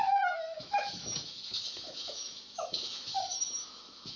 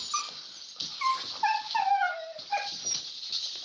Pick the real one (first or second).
second